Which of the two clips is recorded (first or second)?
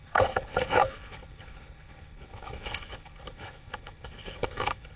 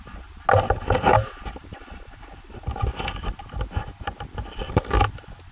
second